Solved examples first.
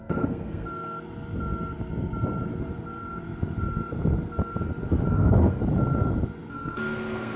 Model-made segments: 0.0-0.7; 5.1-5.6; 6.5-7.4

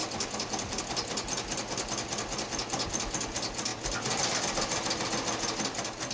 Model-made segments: none